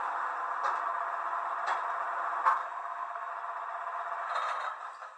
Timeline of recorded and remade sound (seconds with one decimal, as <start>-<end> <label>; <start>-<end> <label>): 0.0-2.6 recorded; 2.6-3.3 remade; 3.3-5.2 recorded